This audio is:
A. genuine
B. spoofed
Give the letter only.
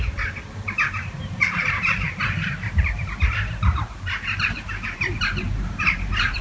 B